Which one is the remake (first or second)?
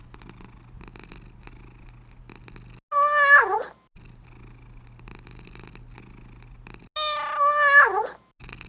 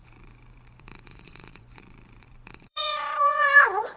second